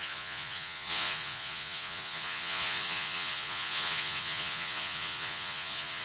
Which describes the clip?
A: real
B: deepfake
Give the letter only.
B